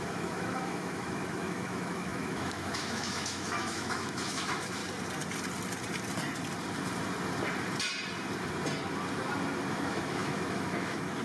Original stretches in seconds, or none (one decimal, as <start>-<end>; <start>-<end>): 4.8-9.7